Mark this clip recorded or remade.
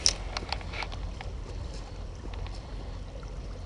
recorded